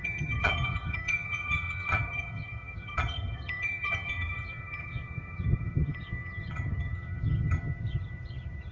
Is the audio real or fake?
fake